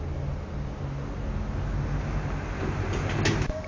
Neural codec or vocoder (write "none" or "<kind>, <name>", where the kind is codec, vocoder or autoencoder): none